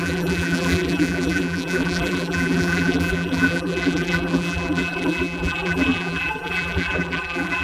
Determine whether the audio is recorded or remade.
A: remade